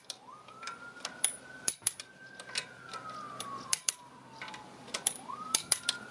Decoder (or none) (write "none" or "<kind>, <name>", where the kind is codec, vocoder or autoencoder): vocoder, BigVGAN v2